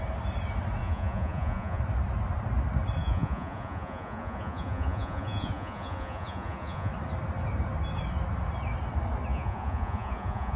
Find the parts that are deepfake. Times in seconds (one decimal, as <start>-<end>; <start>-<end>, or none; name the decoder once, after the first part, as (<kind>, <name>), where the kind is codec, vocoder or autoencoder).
0.8-1.8 (vocoder, Vocos); 3.0-6.9; 9.3-10.6